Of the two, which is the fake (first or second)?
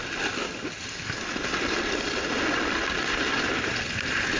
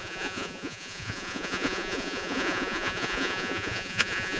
second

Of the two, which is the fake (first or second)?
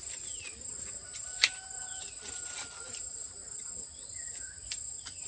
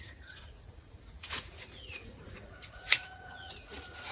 second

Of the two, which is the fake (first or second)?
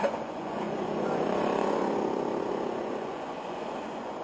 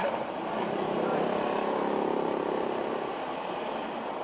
first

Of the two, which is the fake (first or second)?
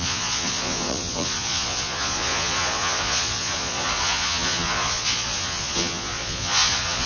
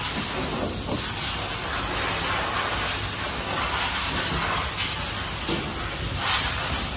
first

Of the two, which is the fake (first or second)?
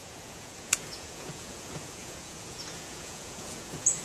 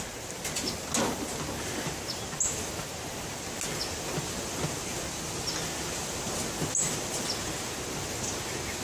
first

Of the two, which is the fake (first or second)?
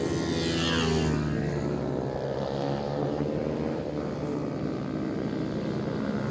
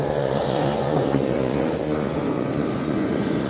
second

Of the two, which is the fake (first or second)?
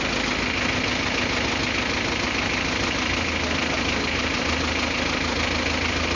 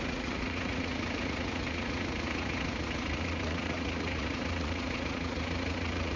second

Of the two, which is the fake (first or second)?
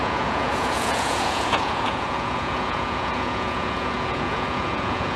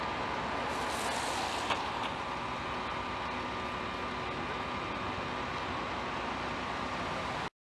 first